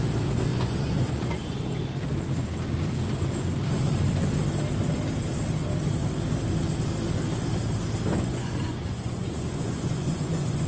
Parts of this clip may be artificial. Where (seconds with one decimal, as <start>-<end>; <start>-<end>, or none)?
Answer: 0.5-1.6; 8.1-10.7